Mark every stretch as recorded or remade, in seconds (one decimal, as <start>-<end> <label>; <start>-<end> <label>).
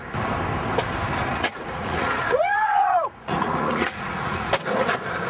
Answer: 0.0-1.3 recorded; 1.3-4.5 remade; 4.5-5.3 recorded